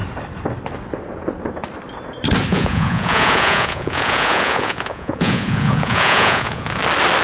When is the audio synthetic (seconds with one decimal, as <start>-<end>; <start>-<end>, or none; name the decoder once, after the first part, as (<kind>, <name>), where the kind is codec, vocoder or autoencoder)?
2.5-6.8 (vocoder, Vocos)